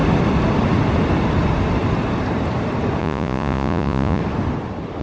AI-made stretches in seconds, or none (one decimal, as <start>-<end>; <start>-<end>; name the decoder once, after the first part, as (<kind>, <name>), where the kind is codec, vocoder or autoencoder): 3.0-4.2 (vocoder, Vocos)